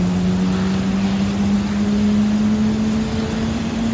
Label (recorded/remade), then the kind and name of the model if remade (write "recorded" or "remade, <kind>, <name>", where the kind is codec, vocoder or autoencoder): recorded